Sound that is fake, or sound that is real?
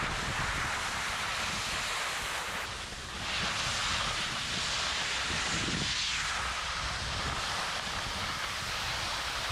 real